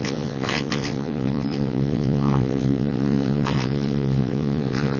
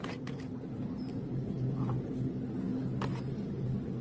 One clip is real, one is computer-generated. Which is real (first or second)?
second